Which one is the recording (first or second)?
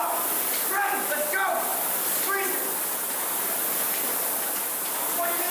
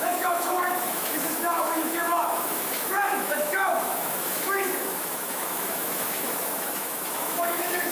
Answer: first